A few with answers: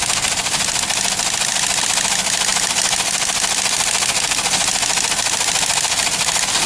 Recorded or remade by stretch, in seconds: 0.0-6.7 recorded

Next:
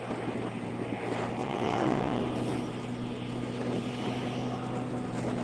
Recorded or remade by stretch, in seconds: 0.0-1.4 recorded; 1.4-2.2 remade; 2.2-5.4 recorded

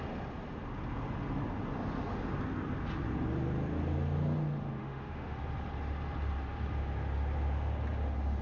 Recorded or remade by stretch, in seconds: 0.0-4.8 recorded; 4.8-5.4 remade; 5.4-8.4 recorded

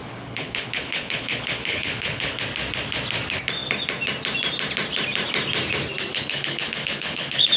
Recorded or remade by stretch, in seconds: 0.0-2.4 remade; 2.4-6.1 recorded; 6.1-7.6 remade

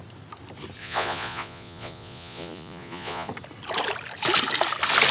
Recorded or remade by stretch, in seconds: 0.0-0.8 recorded; 0.8-3.3 remade; 3.3-5.1 recorded

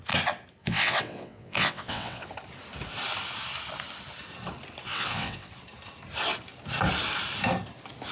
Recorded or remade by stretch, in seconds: 0.0-0.6 recorded; 0.6-2.3 remade; 2.3-4.9 recorded; 4.9-5.5 remade; 5.5-8.1 recorded

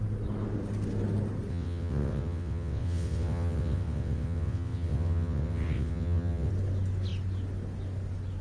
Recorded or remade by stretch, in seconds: 0.0-1.5 recorded; 1.5-6.5 remade; 6.5-8.4 recorded

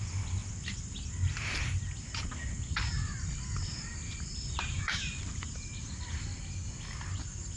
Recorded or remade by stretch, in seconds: 0.0-3.9 recorded; 3.9-6.4 remade; 6.4-7.6 recorded